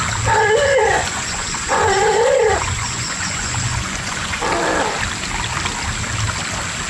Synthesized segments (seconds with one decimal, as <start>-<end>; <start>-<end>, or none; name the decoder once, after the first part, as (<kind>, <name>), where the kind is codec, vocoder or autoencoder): 0.8-4.4 (vocoder, Vocos)